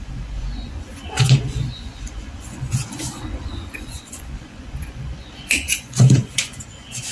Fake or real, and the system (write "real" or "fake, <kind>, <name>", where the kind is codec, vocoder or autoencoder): fake, vocoder, Vocos